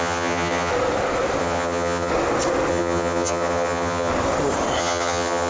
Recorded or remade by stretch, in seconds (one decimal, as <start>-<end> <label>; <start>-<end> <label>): 0.0-0.7 remade; 0.7-1.4 recorded; 1.4-2.1 remade; 2.1-2.7 recorded; 2.7-4.1 remade; 4.1-4.8 recorded; 4.8-5.5 remade